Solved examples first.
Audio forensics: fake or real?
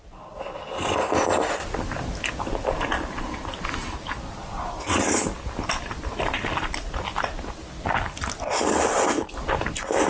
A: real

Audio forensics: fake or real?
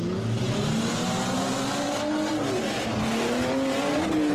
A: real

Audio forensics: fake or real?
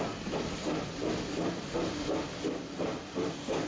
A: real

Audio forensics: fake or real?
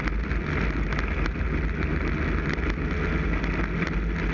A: real